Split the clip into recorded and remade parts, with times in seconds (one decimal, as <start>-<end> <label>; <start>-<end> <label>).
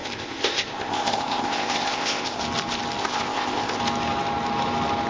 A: 0.0-2.4 remade; 2.4-3.0 recorded; 3.0-3.8 remade; 3.8-5.1 recorded